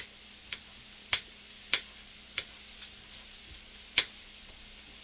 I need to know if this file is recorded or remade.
recorded